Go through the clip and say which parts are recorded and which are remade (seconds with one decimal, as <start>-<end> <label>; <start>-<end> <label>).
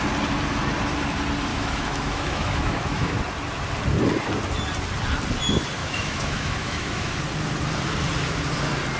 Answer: 0.0-1.5 recorded; 1.5-3.2 remade; 3.2-5.8 recorded; 5.8-7.2 remade; 7.2-9.0 recorded